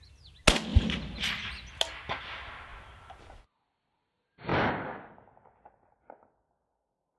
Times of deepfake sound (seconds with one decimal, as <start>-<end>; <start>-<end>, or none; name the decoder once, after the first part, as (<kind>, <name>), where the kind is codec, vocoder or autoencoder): 0.7-1.4 (vocoder, BigVGAN v2)